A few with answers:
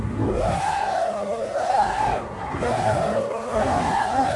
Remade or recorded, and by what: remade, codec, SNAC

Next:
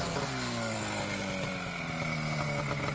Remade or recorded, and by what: recorded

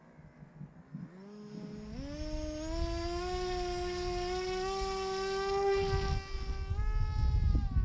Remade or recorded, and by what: recorded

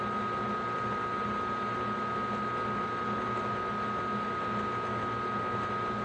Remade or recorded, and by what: recorded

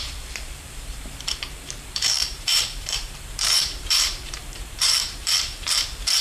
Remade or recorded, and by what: remade, vocoder, BigVGAN v2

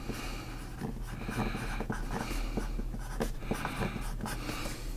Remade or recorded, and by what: recorded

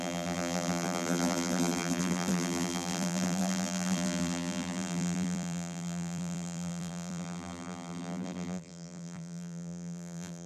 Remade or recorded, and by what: remade, vocoder, BigVGAN v2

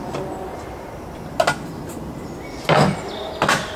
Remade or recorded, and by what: recorded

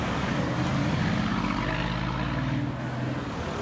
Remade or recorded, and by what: recorded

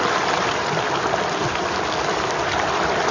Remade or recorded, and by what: recorded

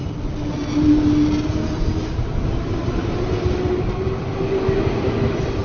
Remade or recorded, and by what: recorded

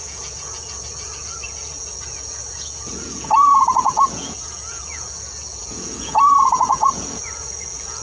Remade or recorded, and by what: remade, vocoder, Vocos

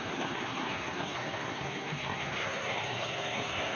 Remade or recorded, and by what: remade, codec, SNAC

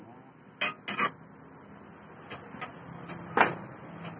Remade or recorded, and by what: recorded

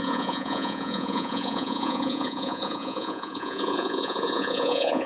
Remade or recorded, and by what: remade, vocoder, Vocos